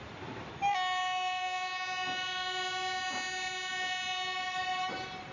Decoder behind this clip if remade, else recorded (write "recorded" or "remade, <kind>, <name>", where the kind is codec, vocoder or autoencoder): recorded